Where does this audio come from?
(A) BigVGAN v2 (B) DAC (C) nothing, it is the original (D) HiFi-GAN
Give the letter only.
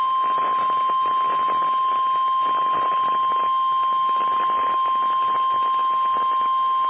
C